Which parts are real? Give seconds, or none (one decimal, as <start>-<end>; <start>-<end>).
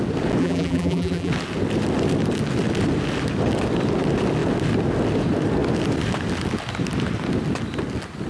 0.0-0.4; 1.3-8.3